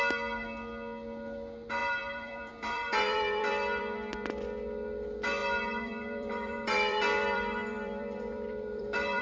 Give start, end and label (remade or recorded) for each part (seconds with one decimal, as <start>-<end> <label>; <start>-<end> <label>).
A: 0.0-1.8 recorded; 1.8-3.8 remade; 3.8-5.4 recorded; 5.4-9.2 remade